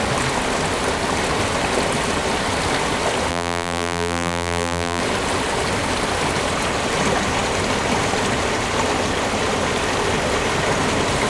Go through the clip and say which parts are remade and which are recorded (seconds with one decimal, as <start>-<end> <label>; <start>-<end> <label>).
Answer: 0.0-3.3 recorded; 3.3-5.0 remade; 5.0-11.3 recorded